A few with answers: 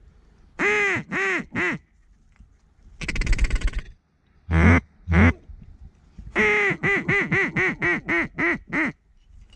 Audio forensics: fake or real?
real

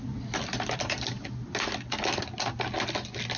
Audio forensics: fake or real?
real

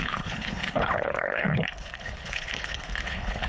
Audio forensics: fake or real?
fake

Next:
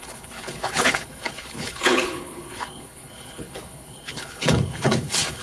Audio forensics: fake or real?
fake